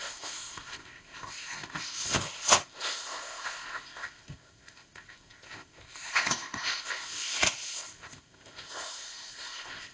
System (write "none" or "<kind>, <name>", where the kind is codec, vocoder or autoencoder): codec, ZipCodec